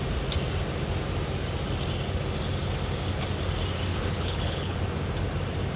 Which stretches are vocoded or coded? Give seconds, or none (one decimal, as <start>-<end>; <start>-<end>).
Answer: 3.9-4.8